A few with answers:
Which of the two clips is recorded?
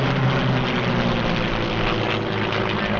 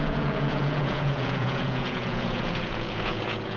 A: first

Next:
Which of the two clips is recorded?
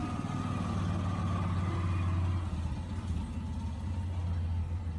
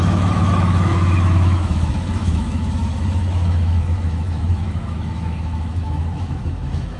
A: first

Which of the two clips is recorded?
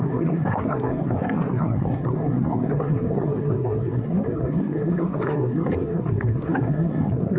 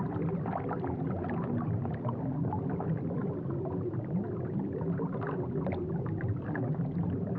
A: second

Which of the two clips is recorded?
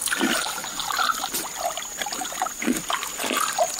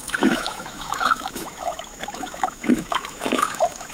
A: first